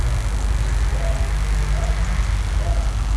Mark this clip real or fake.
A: real